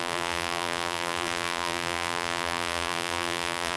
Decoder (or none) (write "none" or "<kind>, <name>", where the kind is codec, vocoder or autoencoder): vocoder, BigVGAN v2